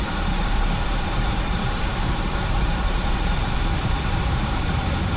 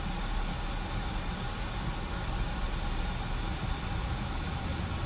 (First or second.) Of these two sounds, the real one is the second